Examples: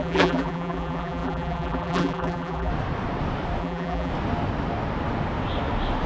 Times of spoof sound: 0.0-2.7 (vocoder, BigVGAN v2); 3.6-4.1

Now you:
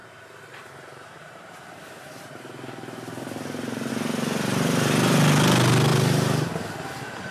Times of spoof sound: 0.0-3.9 (vocoder, BigVGAN v2); 5.9-6.5

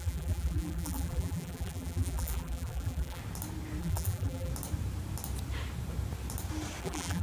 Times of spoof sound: 0.0-3.2 (vocoder, BigVGAN v2); 3.8-4.5; 6.8-7.2

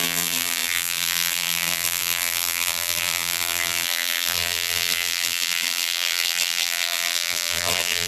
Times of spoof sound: 0.0-8.1 (vocoder, BigVGAN v2)

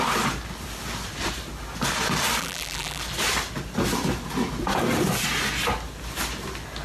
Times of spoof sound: 2.4-3.0 (vocoder, BigVGAN v2)

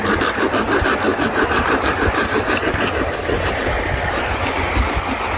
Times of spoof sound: 1.1-4.3 (vocoder, BigVGAN v2)

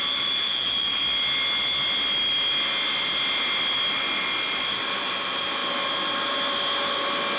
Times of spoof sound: 0.0-1.0 (vocoder, BigVGAN v2); 4.7-5.6